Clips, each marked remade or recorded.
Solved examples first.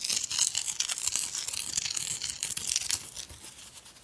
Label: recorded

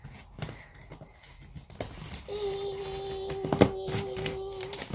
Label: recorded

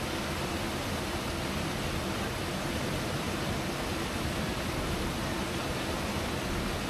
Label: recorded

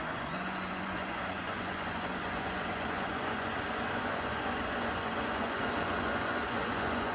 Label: remade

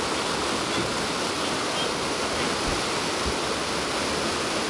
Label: recorded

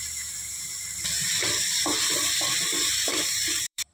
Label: remade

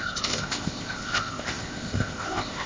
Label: remade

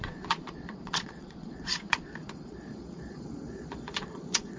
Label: remade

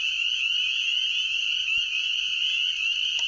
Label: recorded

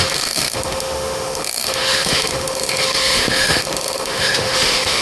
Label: remade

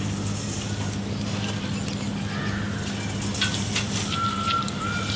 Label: recorded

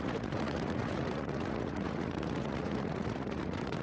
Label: remade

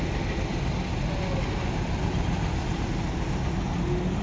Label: recorded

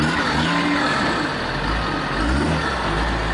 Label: recorded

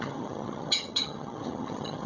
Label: remade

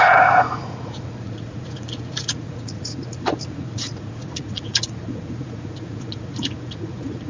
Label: remade